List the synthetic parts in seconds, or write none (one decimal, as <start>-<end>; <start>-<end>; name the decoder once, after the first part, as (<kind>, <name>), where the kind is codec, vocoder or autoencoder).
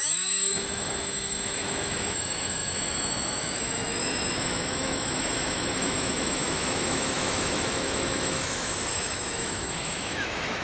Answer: 0.0-10.6 (autoencoder, DAC-VAE)